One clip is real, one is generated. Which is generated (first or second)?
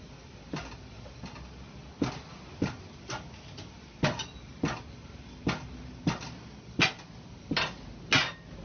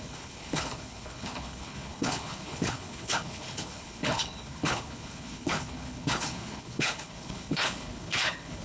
second